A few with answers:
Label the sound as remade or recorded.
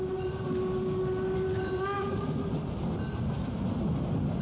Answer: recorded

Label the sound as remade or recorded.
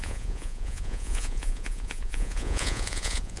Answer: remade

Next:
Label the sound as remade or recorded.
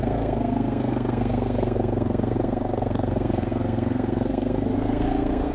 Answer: remade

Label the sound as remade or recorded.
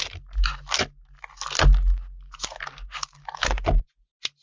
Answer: recorded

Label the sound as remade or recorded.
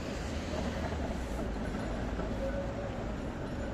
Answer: recorded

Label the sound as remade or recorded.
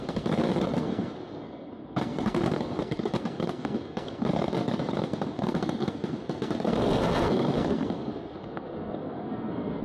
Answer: remade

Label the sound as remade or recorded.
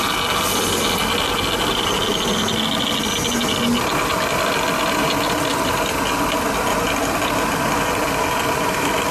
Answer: recorded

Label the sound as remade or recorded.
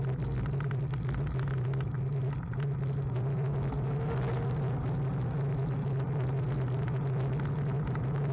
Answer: recorded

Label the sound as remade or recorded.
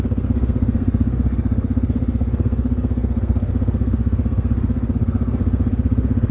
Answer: remade